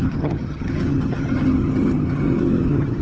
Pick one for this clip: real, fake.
fake